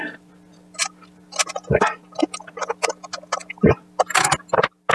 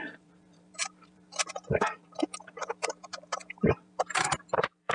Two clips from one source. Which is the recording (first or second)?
first